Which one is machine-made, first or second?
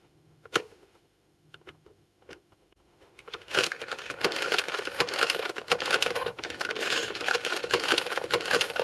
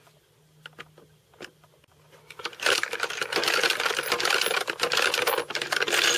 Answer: first